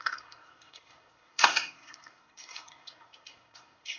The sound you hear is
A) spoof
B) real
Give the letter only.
A